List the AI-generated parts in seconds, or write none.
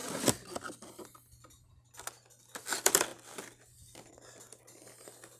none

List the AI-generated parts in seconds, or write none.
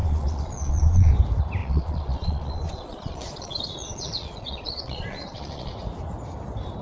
0.0-1.1 (vocoder, Vocos); 1.6-5.7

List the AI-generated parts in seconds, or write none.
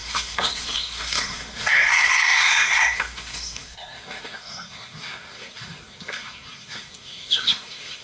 0.0-8.0 (codec, SNAC)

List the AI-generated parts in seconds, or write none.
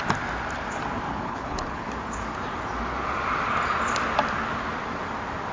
1.1-1.9 (codec, HILCodec)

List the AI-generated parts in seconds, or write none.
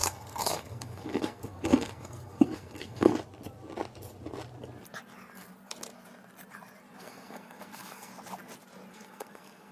0.0-3.1 (codec, SNAC); 7.0-8.1; 8.9-9.7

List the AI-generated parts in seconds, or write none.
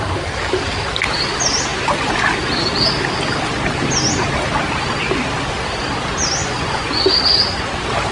6.4-7.0 (vocoder, Vocos)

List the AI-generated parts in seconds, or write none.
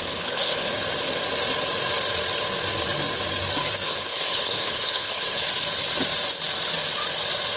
0.0-0.7 (codec, HILCodec); 3.8-5.4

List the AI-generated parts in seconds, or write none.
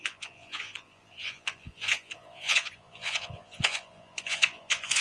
0.0-5.0 (vocoder, Vocos)